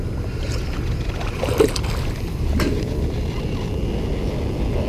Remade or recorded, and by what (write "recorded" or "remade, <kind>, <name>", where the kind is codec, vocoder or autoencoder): recorded